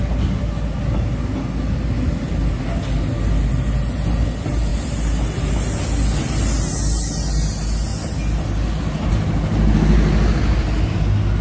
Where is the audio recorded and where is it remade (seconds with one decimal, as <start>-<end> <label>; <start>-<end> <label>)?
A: 0.0-11.4 recorded